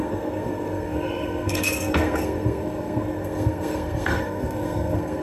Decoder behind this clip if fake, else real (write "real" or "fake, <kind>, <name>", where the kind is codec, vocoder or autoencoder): fake, codec, SNAC